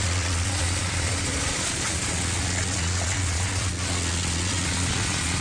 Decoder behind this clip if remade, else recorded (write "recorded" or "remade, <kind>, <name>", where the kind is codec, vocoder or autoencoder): remade, vocoder, Vocos